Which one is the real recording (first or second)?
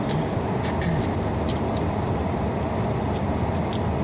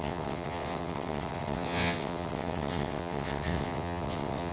first